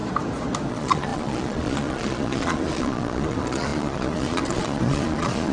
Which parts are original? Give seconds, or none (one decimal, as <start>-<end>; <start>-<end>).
0.0-0.7